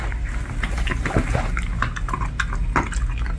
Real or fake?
real